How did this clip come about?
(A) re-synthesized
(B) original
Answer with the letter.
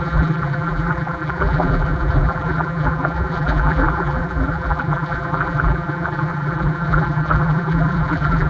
A